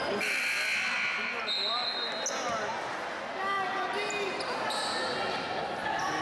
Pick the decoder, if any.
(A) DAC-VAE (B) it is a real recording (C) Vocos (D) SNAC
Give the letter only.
B